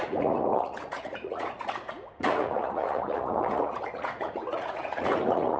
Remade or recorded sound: remade